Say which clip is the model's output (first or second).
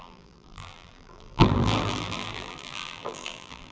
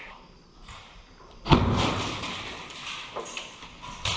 first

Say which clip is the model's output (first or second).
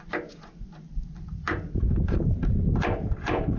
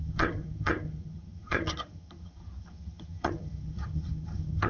second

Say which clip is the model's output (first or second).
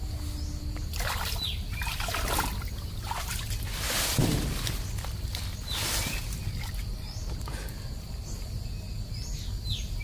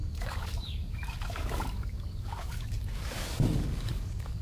second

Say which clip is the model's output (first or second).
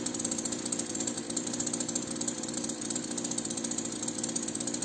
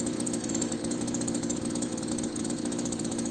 second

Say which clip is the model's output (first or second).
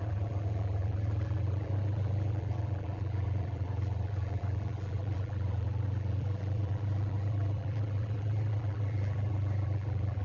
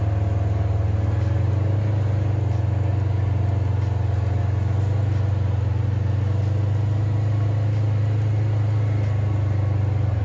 first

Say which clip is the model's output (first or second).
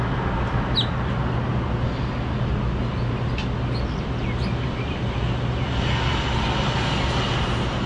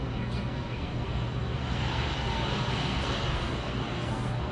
second